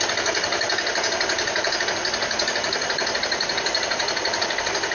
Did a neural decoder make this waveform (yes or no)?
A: no